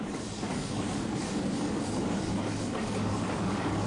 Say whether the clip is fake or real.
fake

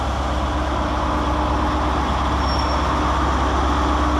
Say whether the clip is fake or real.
real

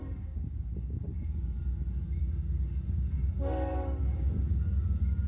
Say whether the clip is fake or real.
fake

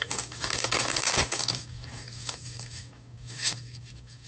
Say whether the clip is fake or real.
fake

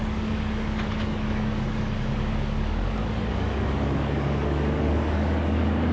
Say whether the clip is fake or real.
fake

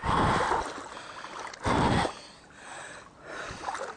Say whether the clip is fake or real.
real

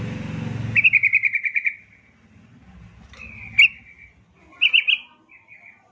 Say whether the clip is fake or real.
real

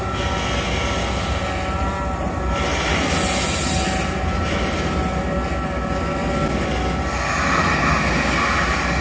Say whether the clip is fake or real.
real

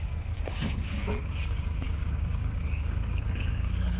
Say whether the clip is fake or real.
fake